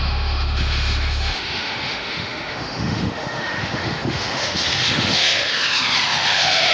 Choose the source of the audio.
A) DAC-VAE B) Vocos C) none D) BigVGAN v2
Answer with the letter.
A